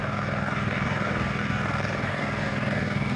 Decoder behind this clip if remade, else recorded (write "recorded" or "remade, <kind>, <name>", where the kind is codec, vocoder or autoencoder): remade, codec, DAC